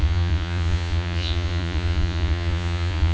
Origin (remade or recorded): remade